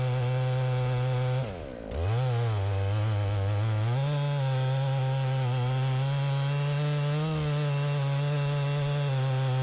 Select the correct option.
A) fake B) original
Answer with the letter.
B